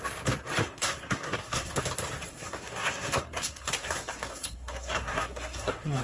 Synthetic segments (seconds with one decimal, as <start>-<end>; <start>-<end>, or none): 0.6-1.8; 2.3-6.0